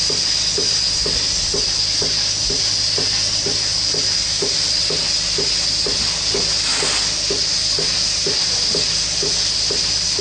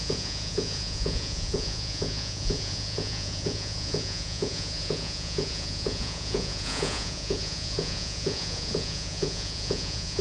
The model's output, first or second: second